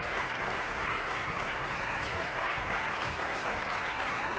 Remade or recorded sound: remade